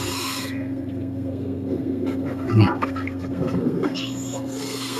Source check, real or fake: fake